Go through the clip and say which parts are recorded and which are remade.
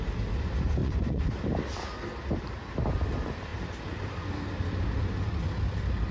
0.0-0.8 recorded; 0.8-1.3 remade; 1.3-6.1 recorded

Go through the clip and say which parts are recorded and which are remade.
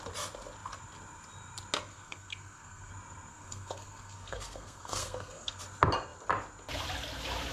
0.0-1.9 recorded; 1.9-2.9 remade; 2.9-3.3 recorded; 3.3-5.6 remade; 5.6-7.5 recorded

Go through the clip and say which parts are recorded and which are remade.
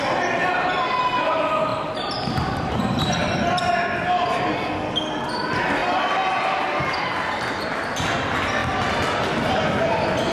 0.0-1.7 recorded; 1.7-3.4 remade; 3.4-10.3 recorded